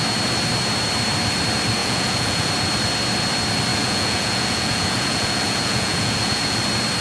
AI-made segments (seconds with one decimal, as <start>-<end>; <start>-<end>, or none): 1.8-2.5; 3.7-6.6